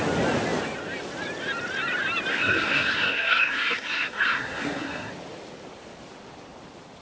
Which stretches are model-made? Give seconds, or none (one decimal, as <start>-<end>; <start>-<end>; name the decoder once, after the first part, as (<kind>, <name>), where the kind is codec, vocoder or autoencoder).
2.3-5.1 (codec, SNAC)

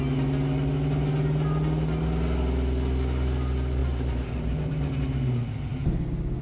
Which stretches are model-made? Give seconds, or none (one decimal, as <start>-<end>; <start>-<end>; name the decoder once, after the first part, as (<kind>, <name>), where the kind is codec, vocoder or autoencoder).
3.8-4.9 (vocoder, BigVGAN v2)

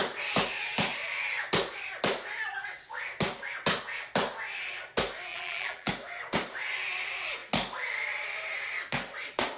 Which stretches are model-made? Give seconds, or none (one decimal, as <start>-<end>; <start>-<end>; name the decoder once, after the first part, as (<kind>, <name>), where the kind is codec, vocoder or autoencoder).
5.3-5.9 (vocoder, BigVGAN v2)